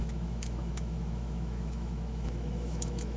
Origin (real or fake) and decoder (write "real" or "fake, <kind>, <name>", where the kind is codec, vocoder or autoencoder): fake, autoencoder, DAC-VAE